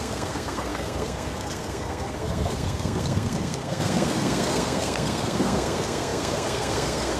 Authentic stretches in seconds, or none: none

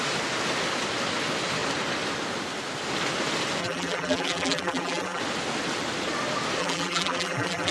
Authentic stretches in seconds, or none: 0.0-3.6; 5.2-6.6

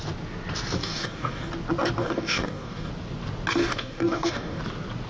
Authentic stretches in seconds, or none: 0.0-0.8; 1.5-2.0; 2.9-3.6; 4.6-5.1

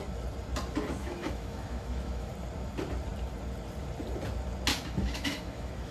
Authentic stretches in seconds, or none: 0.0-1.0; 2.3-4.7

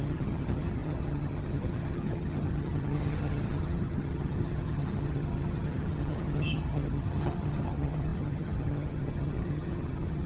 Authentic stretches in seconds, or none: none